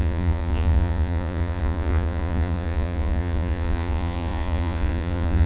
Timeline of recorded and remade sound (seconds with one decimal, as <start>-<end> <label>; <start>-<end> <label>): 0.0-5.5 remade